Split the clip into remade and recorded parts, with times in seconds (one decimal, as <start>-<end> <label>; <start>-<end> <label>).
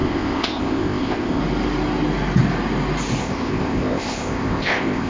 0.0-1.4 remade; 1.4-3.2 recorded; 3.2-5.1 remade